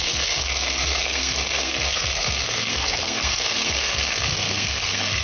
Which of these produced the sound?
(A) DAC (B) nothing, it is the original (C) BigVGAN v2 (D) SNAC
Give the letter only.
D